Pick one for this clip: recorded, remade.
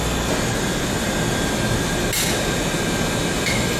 recorded